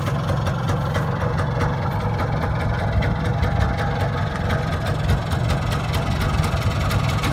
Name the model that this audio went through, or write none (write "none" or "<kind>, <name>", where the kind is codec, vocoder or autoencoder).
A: vocoder, BigVGAN v2